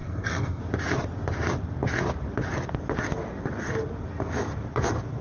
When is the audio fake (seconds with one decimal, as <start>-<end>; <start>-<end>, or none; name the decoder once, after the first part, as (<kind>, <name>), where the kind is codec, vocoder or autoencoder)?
0.0-0.6 (codec, SNAC)

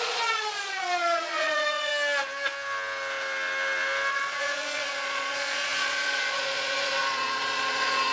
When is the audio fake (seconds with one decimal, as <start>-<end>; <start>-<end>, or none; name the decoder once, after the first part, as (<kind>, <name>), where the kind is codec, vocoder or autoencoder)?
0.0-1.9 (vocoder, Vocos); 4.1-8.1

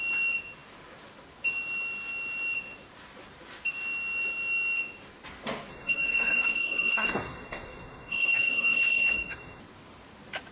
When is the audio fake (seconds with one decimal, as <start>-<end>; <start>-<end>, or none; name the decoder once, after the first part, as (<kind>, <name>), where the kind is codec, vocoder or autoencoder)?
5.7-9.6 (codec, SNAC)

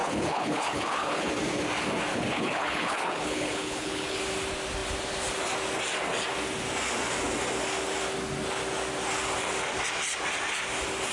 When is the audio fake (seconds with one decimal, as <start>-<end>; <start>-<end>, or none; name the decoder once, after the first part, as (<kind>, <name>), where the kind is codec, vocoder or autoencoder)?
0.0-1.3 (codec, HILCodec); 2.1-4.2

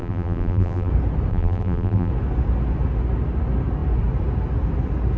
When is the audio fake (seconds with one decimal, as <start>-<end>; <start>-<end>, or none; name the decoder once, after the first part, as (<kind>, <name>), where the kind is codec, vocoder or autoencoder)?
0.0-0.9 (vocoder, BigVGAN v2); 1.3-2.1